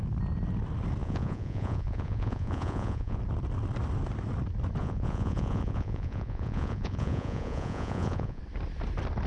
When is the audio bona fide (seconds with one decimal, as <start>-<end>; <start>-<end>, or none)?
0.0-1.0; 3.2-4.8; 8.4-9.3